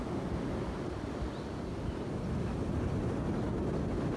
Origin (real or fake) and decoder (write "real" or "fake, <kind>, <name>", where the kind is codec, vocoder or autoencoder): real